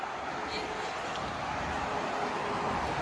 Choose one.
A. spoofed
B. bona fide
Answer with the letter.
B